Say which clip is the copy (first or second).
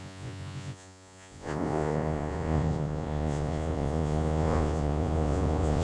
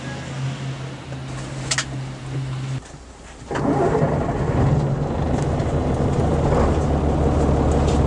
first